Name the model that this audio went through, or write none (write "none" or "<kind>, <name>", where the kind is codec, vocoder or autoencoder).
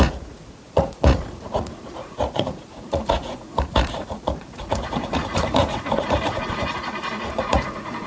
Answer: vocoder, Vocos